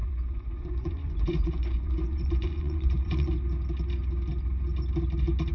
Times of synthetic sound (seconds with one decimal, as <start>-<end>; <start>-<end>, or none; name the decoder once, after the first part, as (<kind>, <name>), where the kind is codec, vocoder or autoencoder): 0.0-3.3 (vocoder, Vocos)